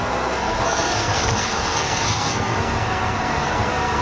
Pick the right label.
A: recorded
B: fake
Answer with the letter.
B